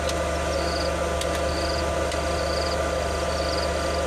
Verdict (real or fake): real